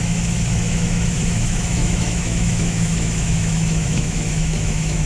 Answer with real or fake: fake